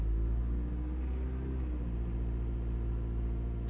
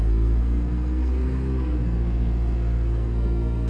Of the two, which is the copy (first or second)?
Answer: second